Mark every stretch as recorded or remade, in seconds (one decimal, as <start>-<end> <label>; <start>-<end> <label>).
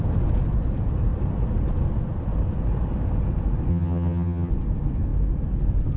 0.0-3.7 recorded; 3.7-4.5 remade; 4.5-6.0 recorded